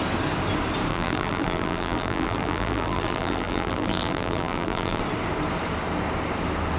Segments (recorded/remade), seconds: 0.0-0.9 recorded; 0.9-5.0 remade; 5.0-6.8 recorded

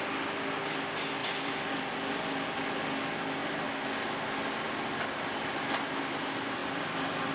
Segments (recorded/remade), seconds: 0.0-1.2 recorded; 1.2-2.2 remade; 2.2-6.6 recorded; 6.6-7.3 remade